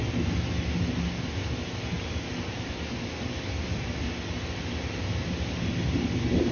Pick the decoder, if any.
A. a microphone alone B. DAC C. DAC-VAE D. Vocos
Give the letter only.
A